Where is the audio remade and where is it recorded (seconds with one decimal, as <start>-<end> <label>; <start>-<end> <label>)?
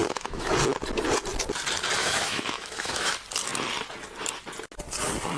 0.0-0.5 remade; 0.5-2.0 recorded; 2.0-3.1 remade; 3.1-5.4 recorded